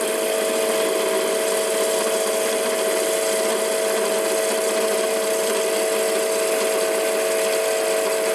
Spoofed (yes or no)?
no